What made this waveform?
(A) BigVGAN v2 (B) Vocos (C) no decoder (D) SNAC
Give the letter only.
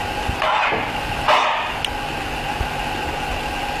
C